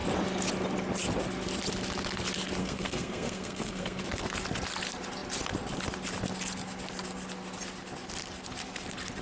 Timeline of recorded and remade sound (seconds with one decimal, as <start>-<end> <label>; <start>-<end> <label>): 0.0-2.6 recorded; 2.6-4.0 remade; 4.0-9.2 recorded